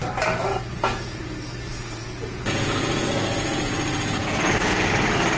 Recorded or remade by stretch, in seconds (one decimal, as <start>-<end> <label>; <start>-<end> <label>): 0.0-0.7 recorded; 0.7-1.2 remade; 1.2-1.7 recorded; 1.7-4.9 remade; 4.9-5.4 recorded